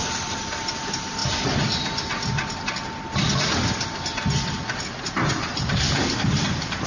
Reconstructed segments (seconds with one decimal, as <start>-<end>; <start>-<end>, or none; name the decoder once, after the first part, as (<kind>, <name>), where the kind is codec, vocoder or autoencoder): 0.0-1.2 (vocoder, BigVGAN v2); 5.1-6.9